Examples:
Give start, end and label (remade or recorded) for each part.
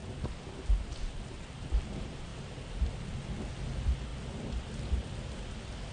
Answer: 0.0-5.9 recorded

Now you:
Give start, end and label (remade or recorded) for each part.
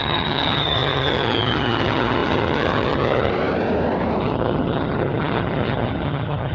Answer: 0.0-3.3 remade; 3.3-4.2 recorded; 4.2-6.5 remade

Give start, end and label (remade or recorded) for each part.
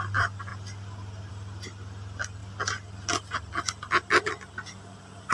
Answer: 0.0-5.3 recorded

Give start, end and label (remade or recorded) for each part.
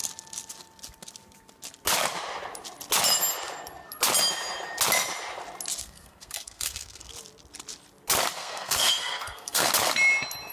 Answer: 0.0-5.8 recorded; 5.8-7.1 remade; 7.1-8.4 recorded; 8.4-9.7 remade; 9.7-10.5 recorded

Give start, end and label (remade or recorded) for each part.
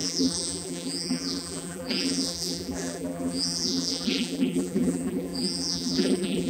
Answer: 0.0-6.5 remade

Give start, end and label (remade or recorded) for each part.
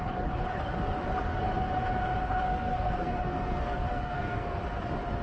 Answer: 0.0-2.5 recorded; 2.5-4.6 remade; 4.6-5.2 recorded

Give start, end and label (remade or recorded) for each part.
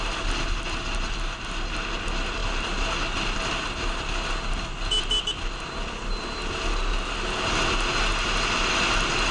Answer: 0.0-9.3 recorded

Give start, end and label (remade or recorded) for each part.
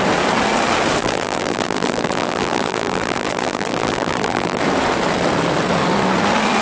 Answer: 0.0-1.0 recorded; 1.0-4.6 remade; 4.6-6.6 recorded